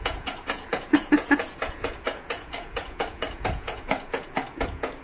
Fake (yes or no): yes